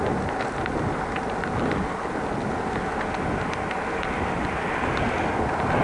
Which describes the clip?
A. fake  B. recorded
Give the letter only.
B